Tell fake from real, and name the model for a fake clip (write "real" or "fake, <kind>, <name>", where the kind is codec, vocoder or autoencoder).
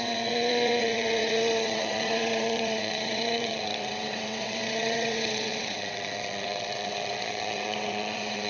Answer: fake, vocoder, WaveNeXt